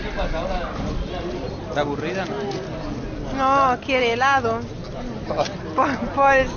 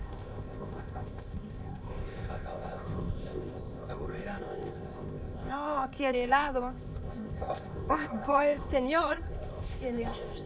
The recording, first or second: first